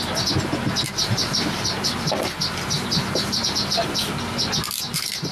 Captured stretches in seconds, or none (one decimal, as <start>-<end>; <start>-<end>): 0.0-1.0; 4.2-5.3